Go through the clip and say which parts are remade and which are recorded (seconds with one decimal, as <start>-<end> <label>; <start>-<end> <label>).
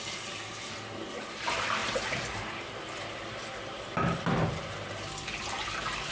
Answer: 0.0-6.1 remade